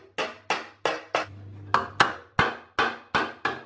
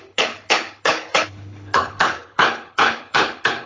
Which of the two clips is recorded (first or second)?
first